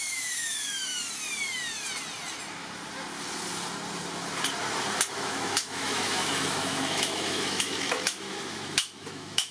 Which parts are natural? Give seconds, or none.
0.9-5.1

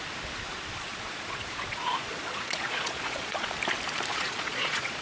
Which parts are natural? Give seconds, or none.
0.0-0.5; 3.5-4.1